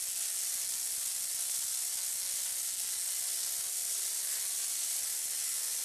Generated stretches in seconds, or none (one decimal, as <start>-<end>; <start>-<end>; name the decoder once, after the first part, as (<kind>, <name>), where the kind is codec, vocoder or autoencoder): none

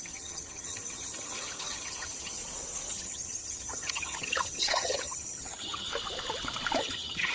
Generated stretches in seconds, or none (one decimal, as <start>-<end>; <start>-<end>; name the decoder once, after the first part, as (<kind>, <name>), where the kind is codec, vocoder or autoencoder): 0.0-2.4 (vocoder, HiFi-GAN); 2.9-5.9; 6.8-7.3